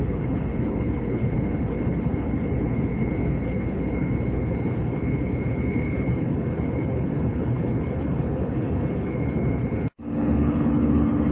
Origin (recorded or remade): remade